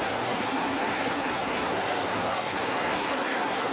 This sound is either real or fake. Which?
fake